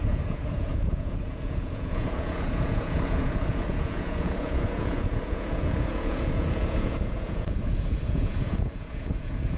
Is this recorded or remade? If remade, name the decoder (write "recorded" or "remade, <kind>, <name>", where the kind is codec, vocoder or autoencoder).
remade, vocoder, Vocos